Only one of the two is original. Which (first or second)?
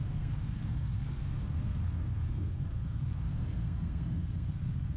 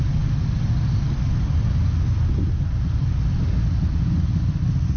second